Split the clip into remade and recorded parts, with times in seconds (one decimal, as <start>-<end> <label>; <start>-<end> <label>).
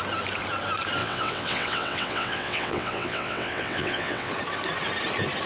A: 0.0-1.0 recorded; 1.0-4.3 remade; 4.3-5.5 recorded